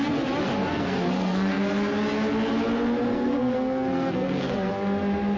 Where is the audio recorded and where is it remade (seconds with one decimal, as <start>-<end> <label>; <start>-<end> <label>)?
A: 0.0-0.7 recorded; 0.7-1.6 remade; 1.6-3.1 recorded; 3.1-4.7 remade; 4.7-5.4 recorded